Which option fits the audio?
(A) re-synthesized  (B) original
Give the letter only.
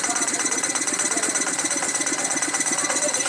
A